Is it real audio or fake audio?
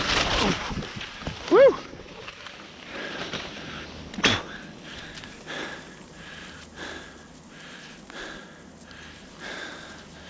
real